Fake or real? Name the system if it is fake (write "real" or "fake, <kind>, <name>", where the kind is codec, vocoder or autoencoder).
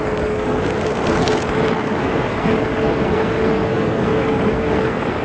fake, codec, SNAC